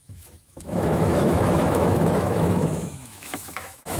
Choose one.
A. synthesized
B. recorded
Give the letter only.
A